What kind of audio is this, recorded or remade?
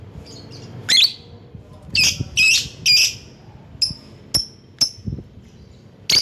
recorded